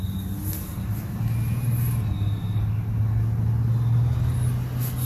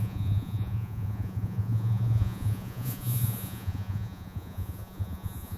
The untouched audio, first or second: first